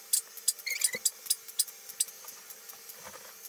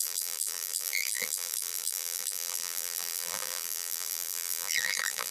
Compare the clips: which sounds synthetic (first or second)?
second